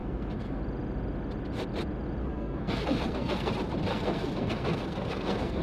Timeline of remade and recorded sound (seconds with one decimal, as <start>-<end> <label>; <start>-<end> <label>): 0.0-0.6 remade; 0.6-2.2 recorded; 2.2-3.5 remade; 3.5-3.9 recorded; 3.9-5.6 remade